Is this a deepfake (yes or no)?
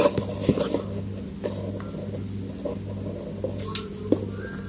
no